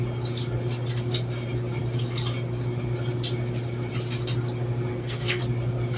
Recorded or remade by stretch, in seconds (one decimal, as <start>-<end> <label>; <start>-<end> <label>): 0.0-4.9 recorded; 4.9-5.4 remade; 5.4-6.0 recorded